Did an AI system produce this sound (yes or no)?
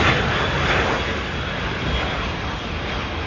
no